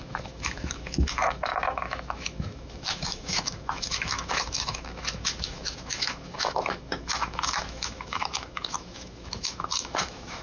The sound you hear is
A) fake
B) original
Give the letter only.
A